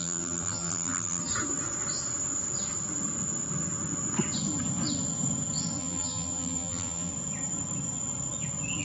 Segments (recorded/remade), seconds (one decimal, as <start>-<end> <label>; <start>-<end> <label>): 0.0-1.3 remade; 1.3-5.8 recorded; 5.8-7.1 remade; 7.1-8.8 recorded